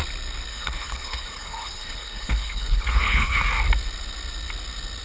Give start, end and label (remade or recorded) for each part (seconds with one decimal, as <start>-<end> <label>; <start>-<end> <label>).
0.0-0.5 recorded; 0.5-3.4 remade; 3.4-5.0 recorded